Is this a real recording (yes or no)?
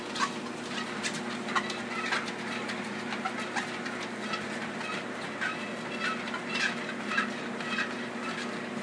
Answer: yes